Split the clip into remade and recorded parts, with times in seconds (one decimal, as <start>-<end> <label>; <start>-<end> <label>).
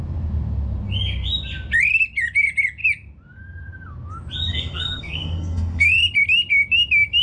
0.0-4.5 recorded; 4.5-6.0 remade; 6.0-7.2 recorded